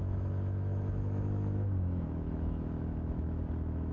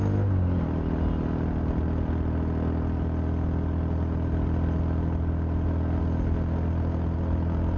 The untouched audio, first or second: second